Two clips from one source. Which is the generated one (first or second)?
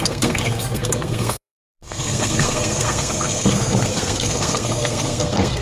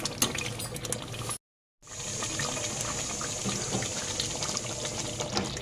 first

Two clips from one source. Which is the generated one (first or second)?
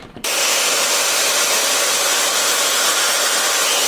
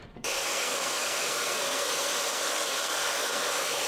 second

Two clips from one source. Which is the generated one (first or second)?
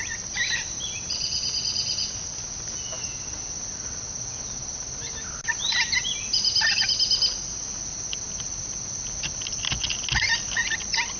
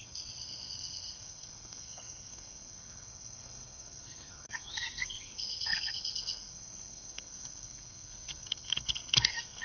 second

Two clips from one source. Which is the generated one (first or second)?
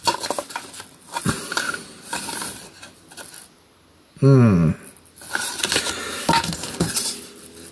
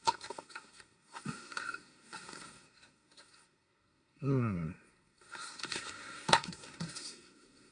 second